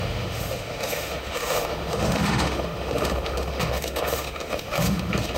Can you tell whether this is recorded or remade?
remade